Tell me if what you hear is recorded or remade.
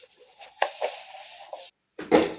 recorded